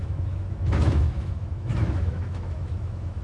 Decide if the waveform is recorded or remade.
remade